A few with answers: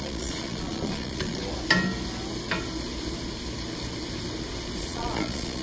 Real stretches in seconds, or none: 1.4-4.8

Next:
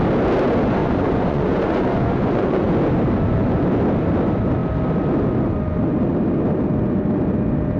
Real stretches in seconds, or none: 0.0-0.8; 2.7-7.8

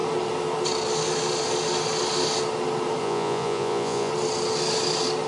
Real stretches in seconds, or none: 0.0-3.0; 4.1-5.3

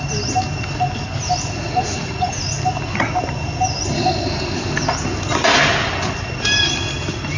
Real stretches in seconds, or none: 0.0-1.6; 2.3-7.4

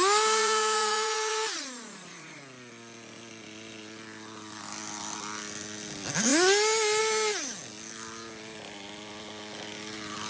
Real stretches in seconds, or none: 0.0-0.4; 2.4-10.3

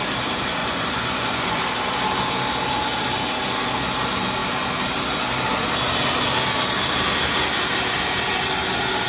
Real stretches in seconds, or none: 0.0-0.6; 1.6-9.1

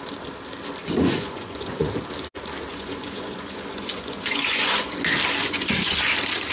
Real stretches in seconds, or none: 0.0-0.8; 1.9-2.7; 5.0-5.4; 6.1-6.5

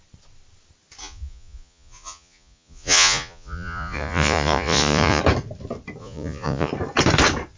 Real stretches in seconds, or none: 0.0-1.0; 5.2-6.0; 6.7-7.6